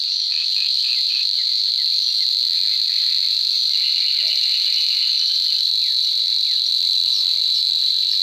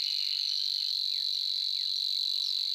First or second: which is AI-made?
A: first